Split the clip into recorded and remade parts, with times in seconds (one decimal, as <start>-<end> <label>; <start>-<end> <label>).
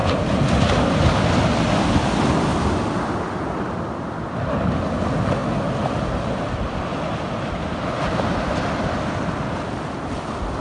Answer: 0.0-1.4 remade; 1.4-10.6 recorded